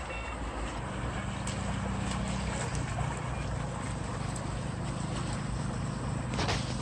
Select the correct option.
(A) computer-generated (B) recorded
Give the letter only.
B